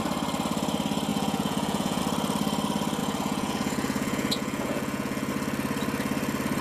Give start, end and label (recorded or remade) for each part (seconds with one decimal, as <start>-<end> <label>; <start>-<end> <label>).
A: 0.0-1.1 recorded; 1.1-2.0 remade; 2.0-3.0 recorded; 3.0-5.3 remade; 5.3-6.6 recorded